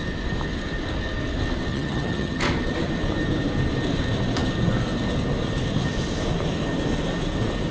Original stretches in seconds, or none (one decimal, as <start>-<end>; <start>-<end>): 0.0-1.7; 2.4-7.7